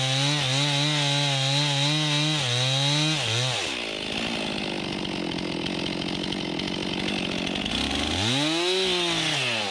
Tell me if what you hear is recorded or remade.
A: recorded